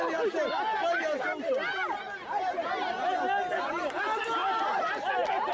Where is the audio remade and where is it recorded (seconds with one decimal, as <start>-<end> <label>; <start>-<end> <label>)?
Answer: 0.0-5.5 recorded